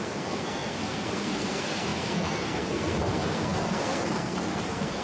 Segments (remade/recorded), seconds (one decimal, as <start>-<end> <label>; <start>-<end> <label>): 0.0-5.0 remade